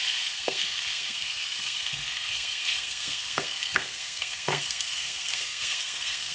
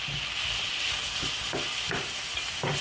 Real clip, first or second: second